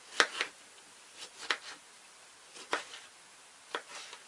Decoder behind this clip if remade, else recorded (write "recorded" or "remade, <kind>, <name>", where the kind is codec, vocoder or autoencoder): recorded